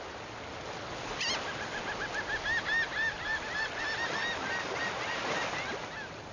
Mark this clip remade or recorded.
recorded